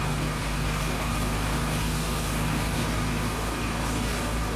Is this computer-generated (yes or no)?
yes